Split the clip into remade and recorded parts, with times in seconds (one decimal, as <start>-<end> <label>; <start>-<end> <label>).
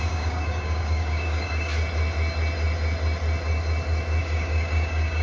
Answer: 0.0-1.7 remade; 1.7-4.2 recorded; 4.2-5.2 remade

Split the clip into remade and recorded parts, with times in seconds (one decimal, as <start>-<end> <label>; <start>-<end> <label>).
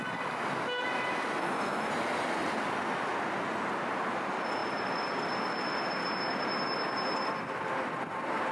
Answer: 0.0-1.4 recorded; 1.4-1.9 remade; 1.9-8.5 recorded